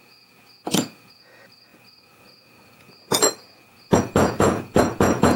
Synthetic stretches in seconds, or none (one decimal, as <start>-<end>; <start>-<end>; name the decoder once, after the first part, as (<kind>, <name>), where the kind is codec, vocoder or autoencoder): 0.0-5.4 (vocoder, Vocos)